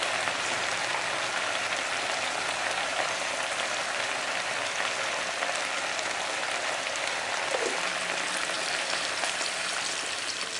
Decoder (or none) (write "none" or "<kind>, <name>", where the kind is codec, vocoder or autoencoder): vocoder, BigVGAN v2